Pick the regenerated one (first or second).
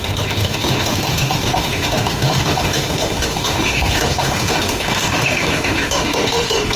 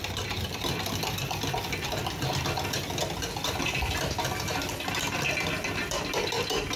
first